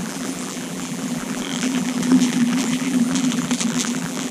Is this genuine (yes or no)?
no